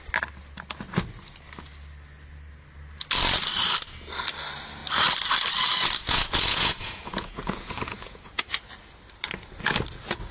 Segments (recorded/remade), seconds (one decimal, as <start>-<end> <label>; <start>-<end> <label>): 0.0-6.0 recorded; 6.0-8.4 remade; 8.4-10.3 recorded